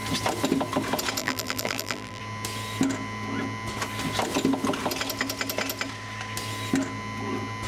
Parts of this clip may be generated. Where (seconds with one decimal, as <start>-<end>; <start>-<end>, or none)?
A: 1.2-2.2